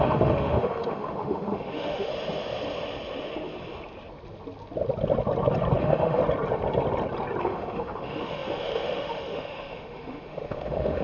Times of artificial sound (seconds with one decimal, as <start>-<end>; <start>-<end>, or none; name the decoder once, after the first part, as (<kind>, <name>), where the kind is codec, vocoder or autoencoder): 0.0-2.1 (autoencoder, DAC-VAE); 5.8-6.2; 7.4-11.0